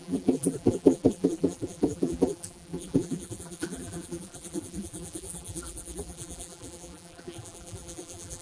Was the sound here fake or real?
fake